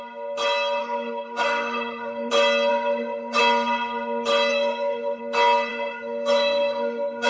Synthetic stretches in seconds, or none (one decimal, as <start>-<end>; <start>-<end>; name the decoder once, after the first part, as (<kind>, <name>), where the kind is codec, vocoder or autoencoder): 0.8-2.3 (codec, SNAC); 2.7-3.4; 4.5-5.2; 5.7-7.3